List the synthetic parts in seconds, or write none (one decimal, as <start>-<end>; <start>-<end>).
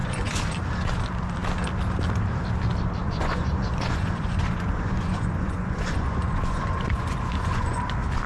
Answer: 0.0-0.5; 3.0-7.8